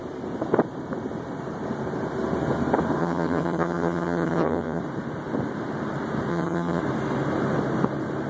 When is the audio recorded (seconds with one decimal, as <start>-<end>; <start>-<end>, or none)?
0.0-3.0; 4.8-6.3; 6.8-8.3